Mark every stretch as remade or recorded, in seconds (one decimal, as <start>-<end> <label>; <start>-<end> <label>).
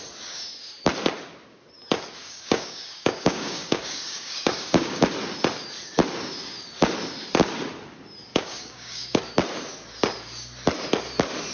0.0-2.2 recorded; 2.2-5.0 remade; 5.0-8.3 recorded; 8.3-9.2 remade; 9.2-11.5 recorded